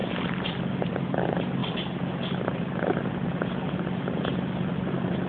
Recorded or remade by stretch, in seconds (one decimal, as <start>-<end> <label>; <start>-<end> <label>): 0.0-5.3 recorded